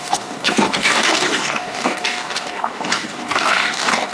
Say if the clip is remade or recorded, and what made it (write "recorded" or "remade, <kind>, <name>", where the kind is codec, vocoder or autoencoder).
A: remade, codec, DAC